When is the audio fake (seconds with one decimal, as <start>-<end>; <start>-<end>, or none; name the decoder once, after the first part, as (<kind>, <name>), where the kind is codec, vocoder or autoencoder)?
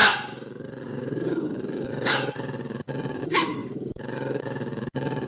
0.0-5.3 (codec, DAC)